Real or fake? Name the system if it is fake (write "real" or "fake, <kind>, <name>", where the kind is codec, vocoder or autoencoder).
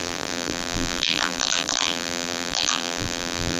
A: fake, vocoder, BigVGAN v2